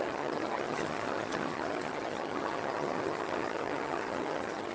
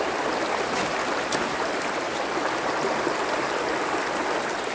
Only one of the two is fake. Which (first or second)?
first